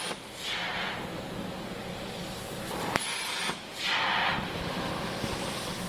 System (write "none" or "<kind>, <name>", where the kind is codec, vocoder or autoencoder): none